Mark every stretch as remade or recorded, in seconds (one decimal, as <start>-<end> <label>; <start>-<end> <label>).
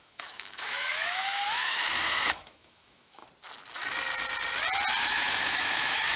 0.0-3.2 remade; 3.2-5.0 recorded; 5.0-6.2 remade